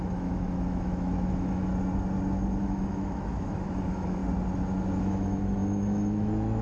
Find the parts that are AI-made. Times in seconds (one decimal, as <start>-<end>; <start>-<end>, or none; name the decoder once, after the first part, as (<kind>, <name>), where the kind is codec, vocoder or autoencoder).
0.0-1.7 (autoencoder, DAC-VAE); 2.6-4.2; 5.0-6.6